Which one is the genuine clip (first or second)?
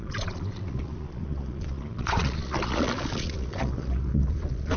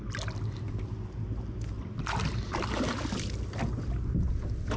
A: second